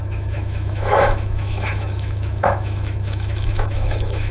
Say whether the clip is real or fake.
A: fake